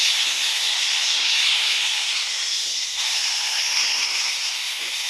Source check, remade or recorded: remade